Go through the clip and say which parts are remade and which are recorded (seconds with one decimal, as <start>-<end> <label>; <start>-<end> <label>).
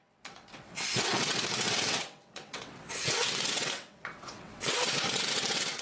0.0-5.8 remade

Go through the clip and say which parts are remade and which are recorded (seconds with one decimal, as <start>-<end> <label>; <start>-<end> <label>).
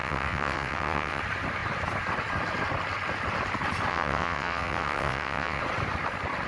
0.0-1.2 remade; 1.2-3.9 recorded; 3.9-5.6 remade; 5.6-6.5 recorded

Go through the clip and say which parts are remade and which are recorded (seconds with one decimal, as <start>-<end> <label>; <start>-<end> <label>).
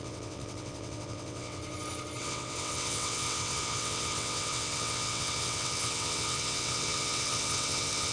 0.0-1.6 remade; 1.6-2.2 recorded; 2.2-8.1 remade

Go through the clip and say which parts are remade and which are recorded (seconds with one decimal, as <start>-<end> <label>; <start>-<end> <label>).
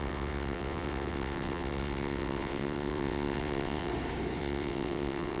0.0-3.9 remade; 3.9-4.4 recorded; 4.4-5.4 remade